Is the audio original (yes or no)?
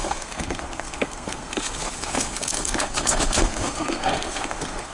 no